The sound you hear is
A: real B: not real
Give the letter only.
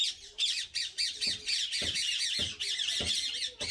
B